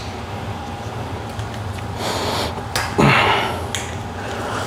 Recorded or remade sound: recorded